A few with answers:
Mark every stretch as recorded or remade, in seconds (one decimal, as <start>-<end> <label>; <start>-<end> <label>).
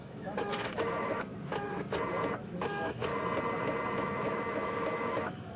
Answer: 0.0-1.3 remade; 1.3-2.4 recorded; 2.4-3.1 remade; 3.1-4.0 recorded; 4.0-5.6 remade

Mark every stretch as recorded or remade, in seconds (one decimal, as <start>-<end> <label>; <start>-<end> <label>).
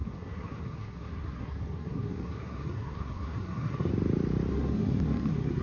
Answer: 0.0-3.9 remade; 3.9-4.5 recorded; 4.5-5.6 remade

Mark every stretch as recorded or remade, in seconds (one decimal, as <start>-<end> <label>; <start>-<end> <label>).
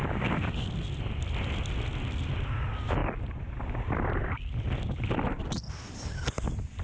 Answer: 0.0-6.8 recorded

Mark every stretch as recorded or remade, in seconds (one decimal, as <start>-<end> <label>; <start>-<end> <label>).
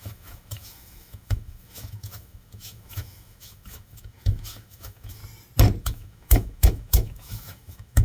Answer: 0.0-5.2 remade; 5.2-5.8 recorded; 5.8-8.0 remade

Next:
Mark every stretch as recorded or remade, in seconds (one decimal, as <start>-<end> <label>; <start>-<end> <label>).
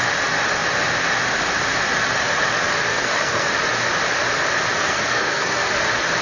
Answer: 0.0-2.9 recorded; 2.9-3.5 remade; 3.5-4.8 recorded; 4.8-5.8 remade; 5.8-6.2 recorded